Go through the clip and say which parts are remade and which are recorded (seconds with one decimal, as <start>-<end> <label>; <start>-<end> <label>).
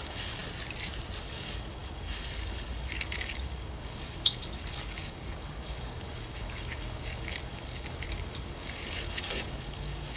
0.0-0.4 remade; 0.4-1.2 recorded; 1.2-10.2 remade